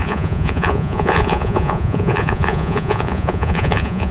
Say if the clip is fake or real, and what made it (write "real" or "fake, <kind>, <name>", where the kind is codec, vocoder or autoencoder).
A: fake, vocoder, Vocos